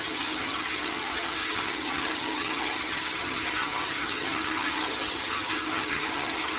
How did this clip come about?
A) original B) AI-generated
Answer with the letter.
B